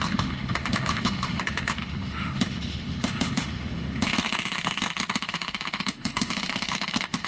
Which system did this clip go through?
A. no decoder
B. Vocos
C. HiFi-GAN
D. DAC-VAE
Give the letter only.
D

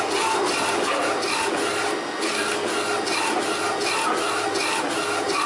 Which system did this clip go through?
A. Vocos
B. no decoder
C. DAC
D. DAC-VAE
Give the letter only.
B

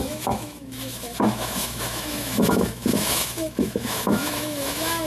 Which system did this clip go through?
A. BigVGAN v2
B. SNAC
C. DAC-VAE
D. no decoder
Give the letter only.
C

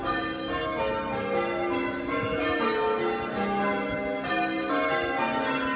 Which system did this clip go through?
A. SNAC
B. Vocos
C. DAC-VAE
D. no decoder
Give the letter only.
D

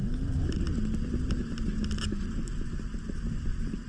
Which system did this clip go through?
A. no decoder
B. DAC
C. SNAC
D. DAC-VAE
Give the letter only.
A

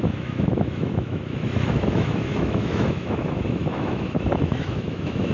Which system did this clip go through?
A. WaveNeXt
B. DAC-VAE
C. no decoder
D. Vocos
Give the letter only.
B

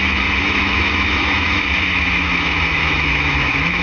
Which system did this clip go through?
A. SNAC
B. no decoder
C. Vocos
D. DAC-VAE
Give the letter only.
D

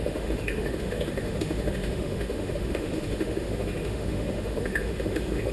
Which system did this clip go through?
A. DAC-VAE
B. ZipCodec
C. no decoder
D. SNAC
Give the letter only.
A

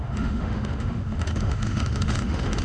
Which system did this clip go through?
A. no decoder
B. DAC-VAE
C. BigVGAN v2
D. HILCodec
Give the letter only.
B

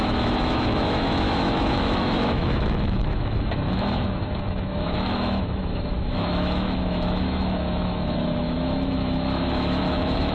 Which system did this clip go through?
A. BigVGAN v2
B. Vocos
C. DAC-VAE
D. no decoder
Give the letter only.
C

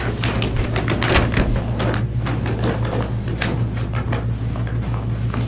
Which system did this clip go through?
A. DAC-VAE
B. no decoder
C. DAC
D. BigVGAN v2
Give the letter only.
B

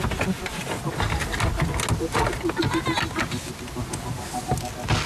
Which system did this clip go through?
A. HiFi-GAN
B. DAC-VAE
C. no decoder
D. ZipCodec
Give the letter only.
C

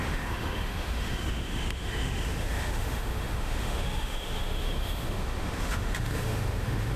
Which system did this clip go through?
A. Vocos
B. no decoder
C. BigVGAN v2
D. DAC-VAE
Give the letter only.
D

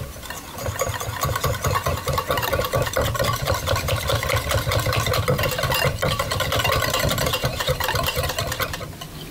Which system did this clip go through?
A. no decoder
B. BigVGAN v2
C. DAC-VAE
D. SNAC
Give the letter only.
A